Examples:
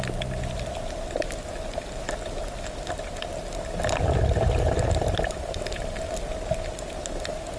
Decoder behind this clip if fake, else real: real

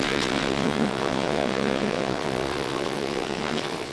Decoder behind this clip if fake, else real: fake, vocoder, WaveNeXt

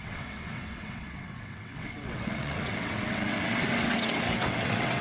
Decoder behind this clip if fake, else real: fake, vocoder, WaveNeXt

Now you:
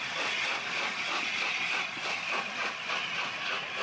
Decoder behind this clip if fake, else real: real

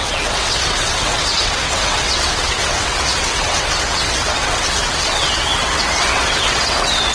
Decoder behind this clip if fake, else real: fake, vocoder, WaveNeXt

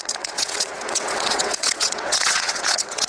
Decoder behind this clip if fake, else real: fake, vocoder, WaveNeXt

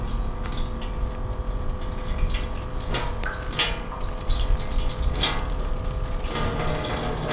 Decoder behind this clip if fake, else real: real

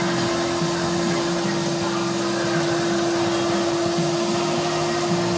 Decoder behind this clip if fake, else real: real